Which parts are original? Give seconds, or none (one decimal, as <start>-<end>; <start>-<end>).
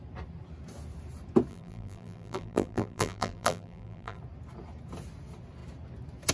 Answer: 0.0-1.5; 4.2-6.3